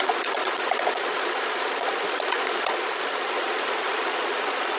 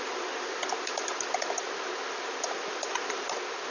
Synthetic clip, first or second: first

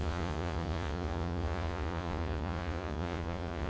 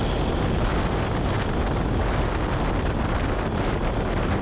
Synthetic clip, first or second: first